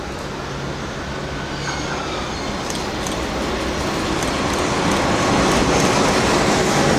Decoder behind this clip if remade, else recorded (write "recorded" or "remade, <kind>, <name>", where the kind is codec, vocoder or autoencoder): recorded